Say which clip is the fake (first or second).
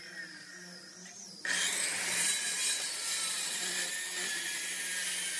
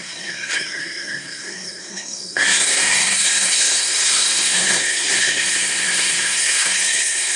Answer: second